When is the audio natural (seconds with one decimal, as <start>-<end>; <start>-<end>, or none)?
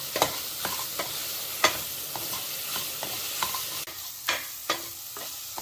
0.0-5.6